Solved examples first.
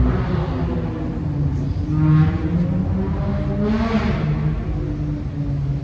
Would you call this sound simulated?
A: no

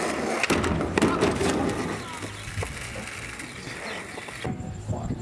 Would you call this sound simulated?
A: no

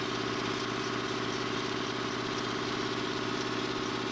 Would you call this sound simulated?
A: no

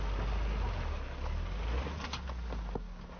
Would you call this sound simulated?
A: no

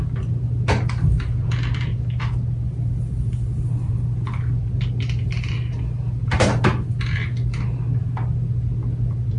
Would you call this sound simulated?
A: no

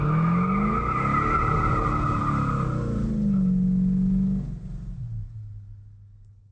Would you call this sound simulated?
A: no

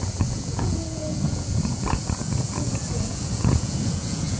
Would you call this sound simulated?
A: yes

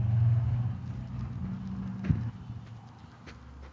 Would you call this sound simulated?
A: no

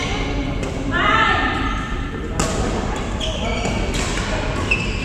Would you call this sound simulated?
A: no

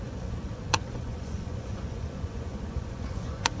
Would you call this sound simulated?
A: yes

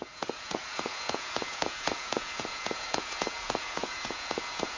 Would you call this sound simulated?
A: yes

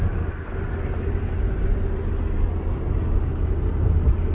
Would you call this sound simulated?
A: no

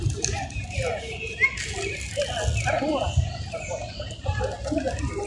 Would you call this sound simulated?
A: no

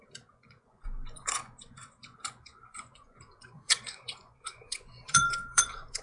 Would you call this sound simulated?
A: yes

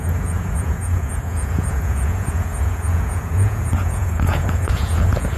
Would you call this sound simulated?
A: yes